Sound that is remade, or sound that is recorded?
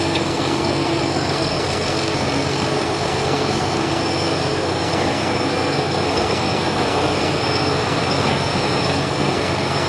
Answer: remade